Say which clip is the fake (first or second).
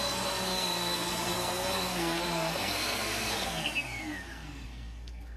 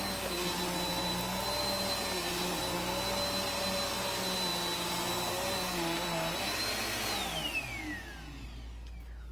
first